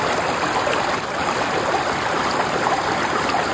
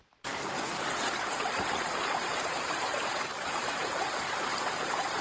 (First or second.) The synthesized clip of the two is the second